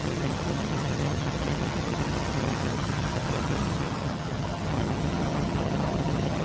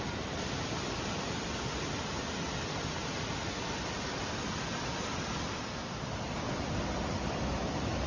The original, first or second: second